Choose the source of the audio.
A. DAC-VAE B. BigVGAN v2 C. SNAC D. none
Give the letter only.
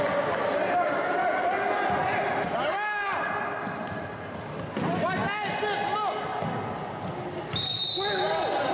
D